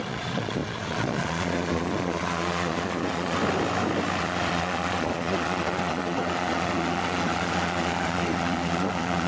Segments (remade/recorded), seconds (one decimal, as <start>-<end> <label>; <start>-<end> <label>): 0.0-3.4 remade; 3.4-4.2 recorded; 4.2-9.3 remade